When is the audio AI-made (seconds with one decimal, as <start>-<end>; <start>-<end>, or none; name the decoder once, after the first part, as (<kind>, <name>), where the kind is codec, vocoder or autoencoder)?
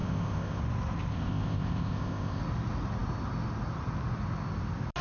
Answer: 0.0-0.6 (codec, ZipCodec); 1.1-2.4